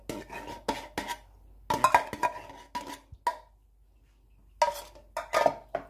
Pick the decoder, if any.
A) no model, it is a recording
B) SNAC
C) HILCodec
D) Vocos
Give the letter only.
A